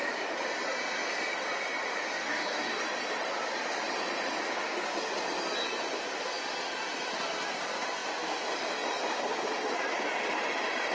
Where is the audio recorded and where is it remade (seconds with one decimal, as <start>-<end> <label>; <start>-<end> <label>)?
0.0-2.2 recorded; 2.2-2.8 remade; 2.8-10.9 recorded